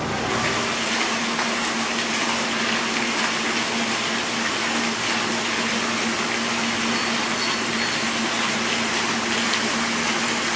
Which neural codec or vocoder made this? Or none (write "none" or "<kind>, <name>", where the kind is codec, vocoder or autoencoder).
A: none